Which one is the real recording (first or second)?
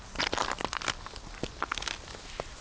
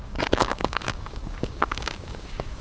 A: first